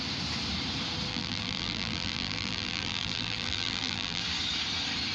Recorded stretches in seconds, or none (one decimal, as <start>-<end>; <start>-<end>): 0.0-1.1; 4.2-5.1